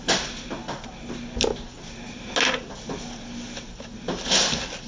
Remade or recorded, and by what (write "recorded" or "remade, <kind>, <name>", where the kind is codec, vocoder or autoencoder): recorded